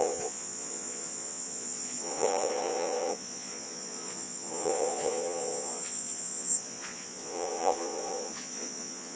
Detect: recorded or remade remade